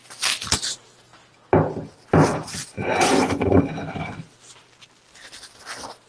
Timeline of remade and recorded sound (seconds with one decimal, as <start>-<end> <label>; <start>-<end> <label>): 0.0-2.6 recorded; 2.6-3.6 remade; 3.6-6.1 recorded